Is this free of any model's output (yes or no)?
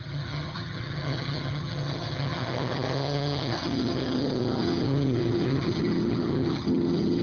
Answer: no